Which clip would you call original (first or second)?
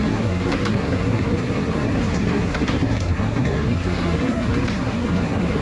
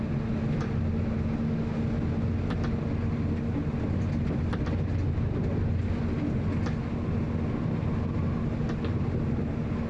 second